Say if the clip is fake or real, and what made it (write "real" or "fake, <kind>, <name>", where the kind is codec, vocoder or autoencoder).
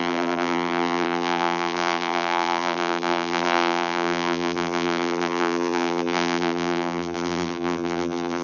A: fake, vocoder, BigVGAN v2